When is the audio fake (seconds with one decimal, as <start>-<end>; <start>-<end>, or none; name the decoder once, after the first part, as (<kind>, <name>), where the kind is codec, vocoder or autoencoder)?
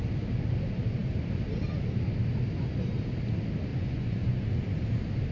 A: 3.7-4.4 (vocoder, Vocos)